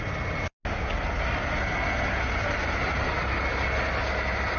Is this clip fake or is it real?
real